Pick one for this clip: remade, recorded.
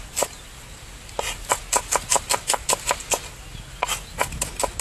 recorded